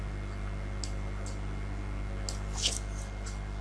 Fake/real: real